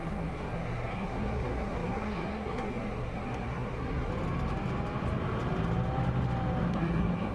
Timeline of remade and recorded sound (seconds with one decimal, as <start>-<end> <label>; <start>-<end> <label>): 0.0-4.1 remade; 4.1-6.7 recorded; 6.7-7.3 remade